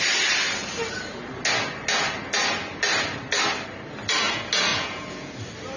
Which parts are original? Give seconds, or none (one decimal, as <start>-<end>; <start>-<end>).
0.0-4.7; 5.3-5.8

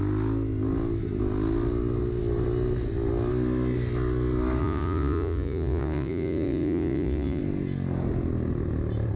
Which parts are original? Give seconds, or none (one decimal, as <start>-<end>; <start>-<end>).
0.0-4.6; 7.4-9.2

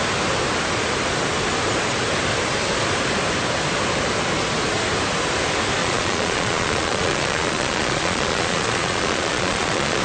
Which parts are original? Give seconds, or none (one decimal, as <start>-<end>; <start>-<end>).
0.0-5.8

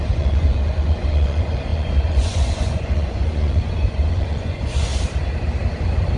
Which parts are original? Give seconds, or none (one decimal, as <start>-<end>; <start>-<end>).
4.9-6.2

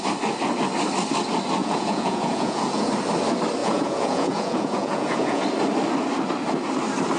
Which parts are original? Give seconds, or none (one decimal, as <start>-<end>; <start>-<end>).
0.0-1.6; 2.9-3.6; 5.4-7.2

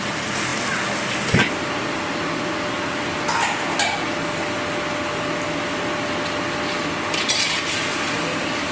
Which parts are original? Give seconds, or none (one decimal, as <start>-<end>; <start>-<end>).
0.0-8.7

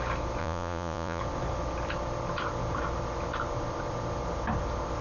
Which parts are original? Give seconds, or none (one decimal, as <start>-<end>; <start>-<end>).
0.0-0.4; 1.2-5.0

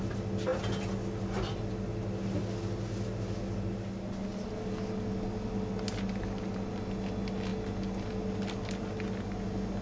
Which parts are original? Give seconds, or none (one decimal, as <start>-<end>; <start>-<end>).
0.0-9.8